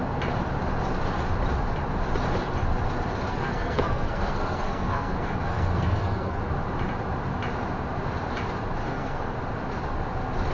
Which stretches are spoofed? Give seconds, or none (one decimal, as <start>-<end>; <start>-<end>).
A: 3.3-6.4; 8.8-9.4